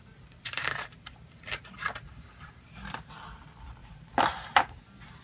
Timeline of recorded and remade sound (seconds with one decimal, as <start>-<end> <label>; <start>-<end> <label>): 0.0-3.1 remade; 3.1-3.8 recorded; 3.8-4.8 remade; 4.8-5.2 recorded